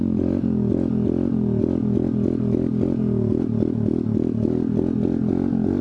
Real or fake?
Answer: real